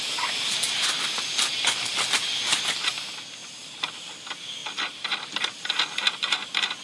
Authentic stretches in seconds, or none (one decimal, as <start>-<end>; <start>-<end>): 0.0-6.8